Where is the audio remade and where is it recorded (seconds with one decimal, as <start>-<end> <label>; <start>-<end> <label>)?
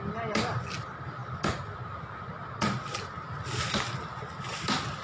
0.0-5.0 recorded